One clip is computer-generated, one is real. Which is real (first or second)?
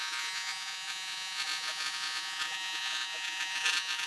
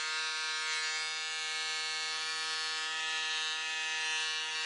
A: second